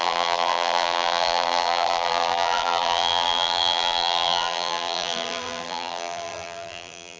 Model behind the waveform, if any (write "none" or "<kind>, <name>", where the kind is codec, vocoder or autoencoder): vocoder, BigVGAN v2